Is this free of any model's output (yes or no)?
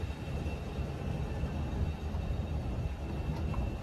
yes